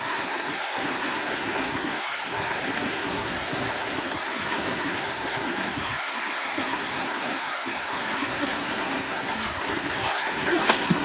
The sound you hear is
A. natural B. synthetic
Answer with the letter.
B